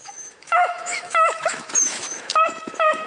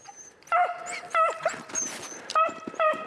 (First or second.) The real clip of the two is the second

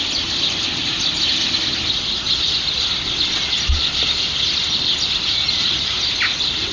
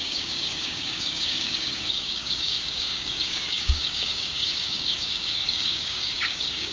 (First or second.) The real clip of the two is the first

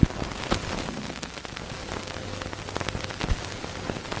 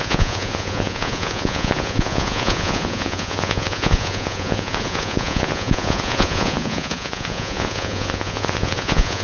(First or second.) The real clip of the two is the first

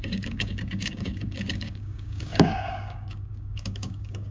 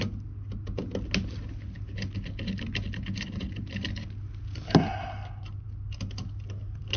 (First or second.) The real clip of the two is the second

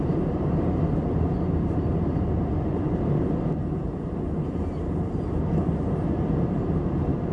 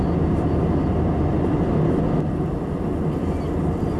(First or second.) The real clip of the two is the second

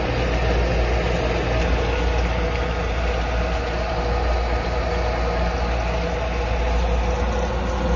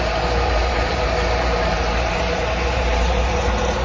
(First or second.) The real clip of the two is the first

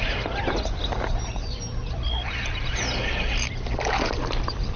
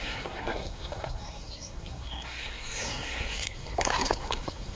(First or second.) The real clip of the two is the first